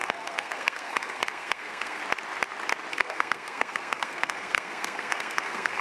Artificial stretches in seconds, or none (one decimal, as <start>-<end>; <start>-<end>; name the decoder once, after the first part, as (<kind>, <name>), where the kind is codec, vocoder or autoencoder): 0.0-2.0 (codec, SNAC); 2.9-5.8